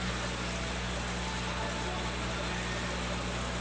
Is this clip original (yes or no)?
yes